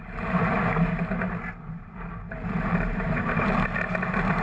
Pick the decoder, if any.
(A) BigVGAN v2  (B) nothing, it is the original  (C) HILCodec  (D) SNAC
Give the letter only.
A